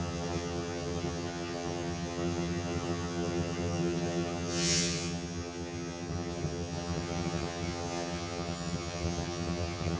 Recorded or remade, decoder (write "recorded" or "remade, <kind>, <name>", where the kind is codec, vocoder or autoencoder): remade, vocoder, HiFi-GAN